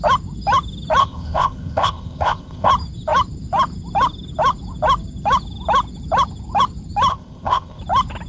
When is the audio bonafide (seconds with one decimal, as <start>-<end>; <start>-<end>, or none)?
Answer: 0.0-1.0; 2.7-7.1; 7.8-8.3